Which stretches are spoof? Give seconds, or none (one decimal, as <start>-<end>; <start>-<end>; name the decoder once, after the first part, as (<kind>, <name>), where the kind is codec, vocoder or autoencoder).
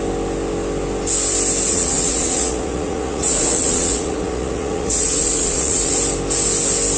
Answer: 1.7-5.9 (vocoder, Vocos)